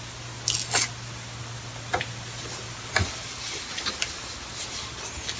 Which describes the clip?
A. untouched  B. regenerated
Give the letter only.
A